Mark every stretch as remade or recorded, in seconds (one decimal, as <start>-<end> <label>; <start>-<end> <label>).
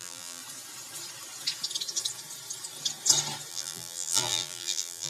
0.0-0.4 remade; 0.4-3.5 recorded; 3.5-5.1 remade